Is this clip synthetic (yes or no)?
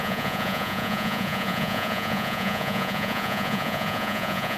yes